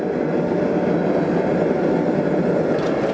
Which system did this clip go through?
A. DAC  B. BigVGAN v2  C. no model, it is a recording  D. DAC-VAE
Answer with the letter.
C